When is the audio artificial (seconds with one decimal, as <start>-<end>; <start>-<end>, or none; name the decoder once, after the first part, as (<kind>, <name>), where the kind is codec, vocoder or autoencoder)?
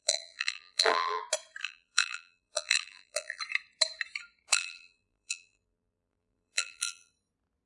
0.0-1.2 (vocoder, BigVGAN v2); 1.6-3.4; 4.5-7.1